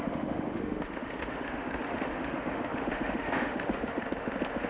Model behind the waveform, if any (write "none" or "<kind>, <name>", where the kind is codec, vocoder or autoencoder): autoencoder, DAC-VAE